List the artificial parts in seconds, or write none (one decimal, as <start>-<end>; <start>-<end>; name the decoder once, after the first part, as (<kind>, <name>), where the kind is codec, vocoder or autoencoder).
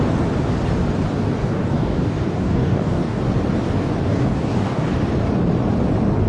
1.4-3.2 (codec, DAC); 4.1-4.9